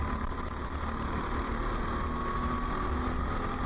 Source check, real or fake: real